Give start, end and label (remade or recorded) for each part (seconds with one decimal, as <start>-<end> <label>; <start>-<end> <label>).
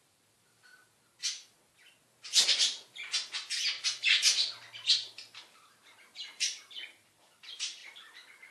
0.0-0.8 remade; 0.8-4.9 recorded; 4.9-8.5 remade